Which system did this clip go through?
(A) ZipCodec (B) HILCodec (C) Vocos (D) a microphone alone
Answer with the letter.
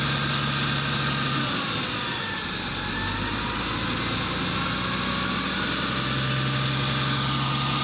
D